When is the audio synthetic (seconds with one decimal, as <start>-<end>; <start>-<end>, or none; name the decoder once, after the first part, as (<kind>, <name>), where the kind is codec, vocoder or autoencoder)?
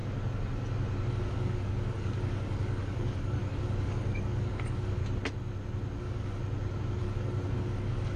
1.1-5.0 (codec, DAC); 6.0-6.4; 7.0-8.2